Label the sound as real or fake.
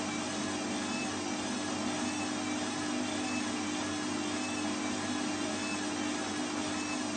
real